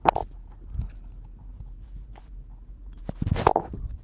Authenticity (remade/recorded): recorded